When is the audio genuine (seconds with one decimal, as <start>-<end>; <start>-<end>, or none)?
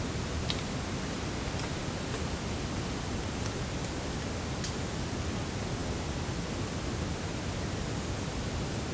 0.0-8.9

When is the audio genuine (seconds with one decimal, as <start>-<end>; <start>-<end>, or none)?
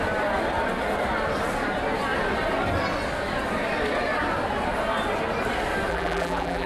0.0-5.9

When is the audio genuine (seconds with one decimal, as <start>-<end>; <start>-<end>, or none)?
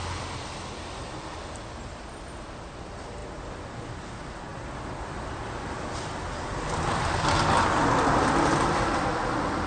0.0-9.7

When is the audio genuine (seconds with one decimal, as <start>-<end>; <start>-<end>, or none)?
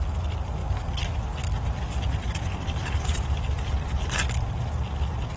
0.0-2.8; 3.7-5.4